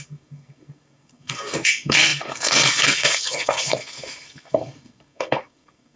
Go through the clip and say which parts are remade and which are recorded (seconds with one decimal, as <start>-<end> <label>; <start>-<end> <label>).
0.0-6.0 remade